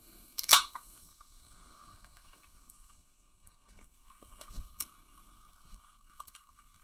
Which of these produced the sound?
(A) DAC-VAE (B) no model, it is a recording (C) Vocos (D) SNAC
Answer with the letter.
D